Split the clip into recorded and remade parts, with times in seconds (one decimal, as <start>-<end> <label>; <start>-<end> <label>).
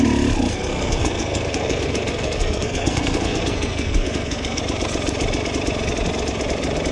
0.0-0.5 recorded; 0.5-4.6 remade; 4.6-6.9 recorded